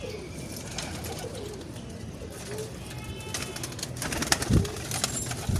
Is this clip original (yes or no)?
yes